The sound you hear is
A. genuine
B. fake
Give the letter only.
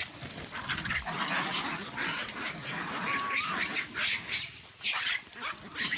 A